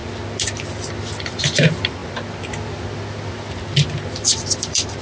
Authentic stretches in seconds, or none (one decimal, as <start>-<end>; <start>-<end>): 0.0-1.2; 2.0-4.2